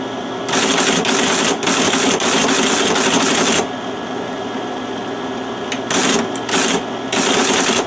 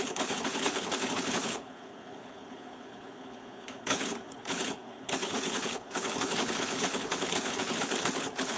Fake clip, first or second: second